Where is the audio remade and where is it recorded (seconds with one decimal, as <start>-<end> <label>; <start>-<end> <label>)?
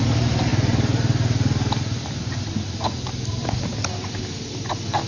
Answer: 0.0-5.1 recorded